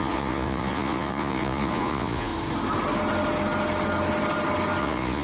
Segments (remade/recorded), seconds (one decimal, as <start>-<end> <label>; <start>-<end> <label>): 0.0-2.3 remade; 2.3-4.8 recorded; 4.8-5.2 remade